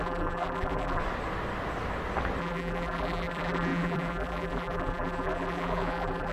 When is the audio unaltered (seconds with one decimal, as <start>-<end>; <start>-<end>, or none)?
1.0-2.4